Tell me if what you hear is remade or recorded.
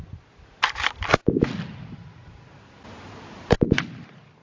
recorded